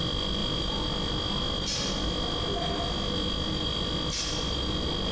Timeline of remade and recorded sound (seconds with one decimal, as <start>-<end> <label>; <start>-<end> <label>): 0.0-5.1 recorded